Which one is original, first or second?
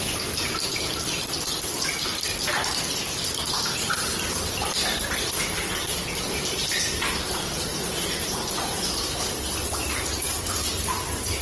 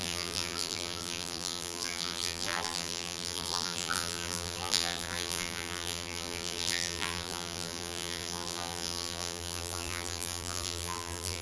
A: first